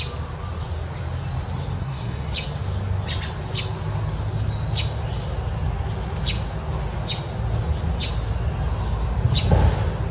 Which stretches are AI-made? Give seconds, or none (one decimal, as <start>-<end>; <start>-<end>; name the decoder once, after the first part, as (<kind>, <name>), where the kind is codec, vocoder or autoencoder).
1.8-2.3 (codec, SNAC)